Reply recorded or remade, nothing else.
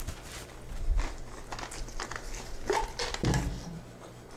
recorded